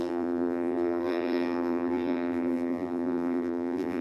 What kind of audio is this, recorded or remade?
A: remade